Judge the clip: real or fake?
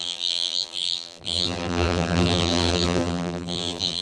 fake